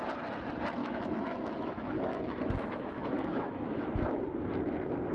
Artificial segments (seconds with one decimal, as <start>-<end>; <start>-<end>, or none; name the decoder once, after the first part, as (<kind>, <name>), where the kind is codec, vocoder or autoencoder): 0.8-3.9 (autoencoder, DAC-VAE)